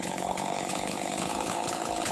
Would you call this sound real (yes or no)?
no